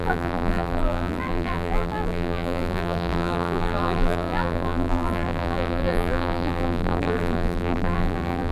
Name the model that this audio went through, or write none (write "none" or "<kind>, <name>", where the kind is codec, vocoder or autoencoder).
vocoder, BigVGAN v2